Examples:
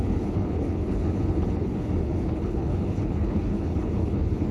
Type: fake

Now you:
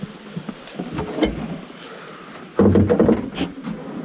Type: real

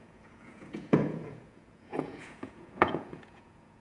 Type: fake